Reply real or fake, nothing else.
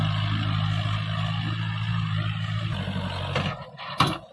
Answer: real